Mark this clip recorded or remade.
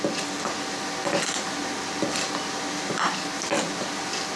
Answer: recorded